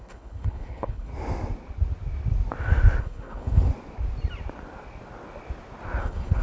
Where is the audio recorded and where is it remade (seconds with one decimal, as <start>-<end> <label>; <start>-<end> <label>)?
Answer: 0.0-1.1 remade; 1.1-3.0 recorded; 3.0-3.7 remade; 3.7-6.0 recorded; 6.0-6.4 remade